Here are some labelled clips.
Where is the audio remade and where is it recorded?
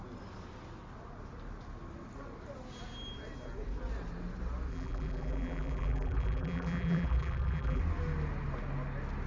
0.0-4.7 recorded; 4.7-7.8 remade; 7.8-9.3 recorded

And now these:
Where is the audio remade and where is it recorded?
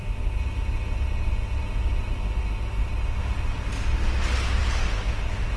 0.0-5.6 recorded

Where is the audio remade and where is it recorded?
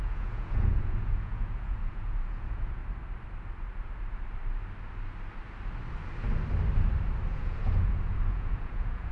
0.0-2.8 remade; 2.8-7.3 recorded; 7.3-9.1 remade